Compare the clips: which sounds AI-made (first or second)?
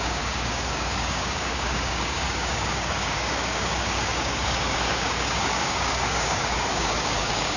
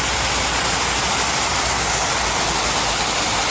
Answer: first